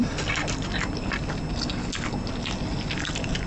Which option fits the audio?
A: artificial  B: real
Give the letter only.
B